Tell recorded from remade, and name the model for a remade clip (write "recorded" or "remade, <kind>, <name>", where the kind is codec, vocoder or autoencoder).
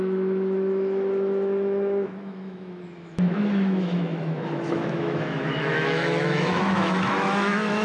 remade, autoencoder, DAC-VAE